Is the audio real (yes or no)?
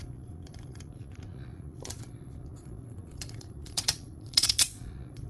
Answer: no